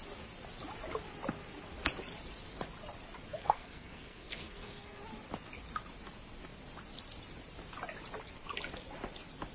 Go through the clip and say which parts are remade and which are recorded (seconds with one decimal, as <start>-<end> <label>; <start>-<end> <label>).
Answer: 0.0-3.3 recorded; 3.3-5.0 remade; 5.0-9.5 recorded